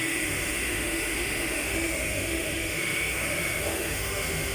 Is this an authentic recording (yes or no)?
no